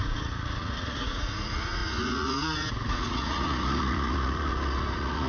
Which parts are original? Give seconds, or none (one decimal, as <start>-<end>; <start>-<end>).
none